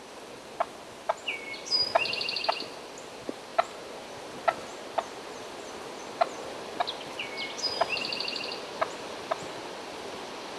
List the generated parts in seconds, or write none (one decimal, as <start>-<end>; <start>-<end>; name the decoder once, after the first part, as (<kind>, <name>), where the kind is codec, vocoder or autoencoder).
3.5-5.5 (vocoder, BigVGAN v2)